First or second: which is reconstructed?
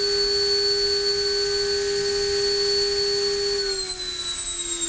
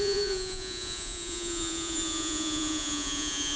second